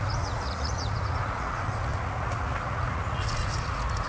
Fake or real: fake